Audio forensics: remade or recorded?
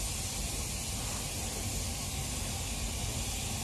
recorded